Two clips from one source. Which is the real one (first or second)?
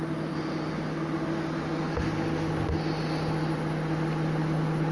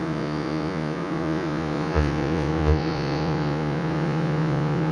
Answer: first